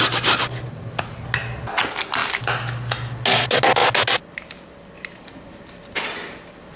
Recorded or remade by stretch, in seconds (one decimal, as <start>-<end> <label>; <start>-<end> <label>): 0.0-6.8 recorded